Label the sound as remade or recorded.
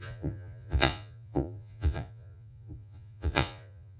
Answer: remade